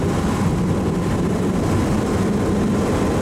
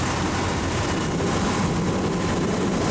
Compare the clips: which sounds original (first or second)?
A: second